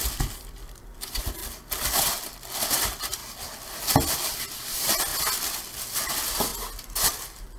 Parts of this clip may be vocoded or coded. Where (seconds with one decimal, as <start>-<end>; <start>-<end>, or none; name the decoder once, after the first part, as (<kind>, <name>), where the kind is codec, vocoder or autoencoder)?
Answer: 0.0-1.4 (vocoder, BigVGAN v2); 2.0-3.2; 4.1-5.1; 6.1-6.5; 7.1-7.6